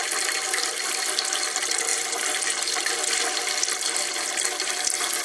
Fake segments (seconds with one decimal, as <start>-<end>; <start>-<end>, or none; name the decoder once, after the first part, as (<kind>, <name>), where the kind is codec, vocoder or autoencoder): none